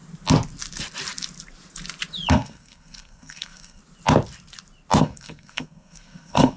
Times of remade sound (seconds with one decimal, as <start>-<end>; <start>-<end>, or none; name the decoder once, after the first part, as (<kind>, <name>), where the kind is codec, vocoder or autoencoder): 2.3-3.8 (codec, SNAC); 5.0-6.6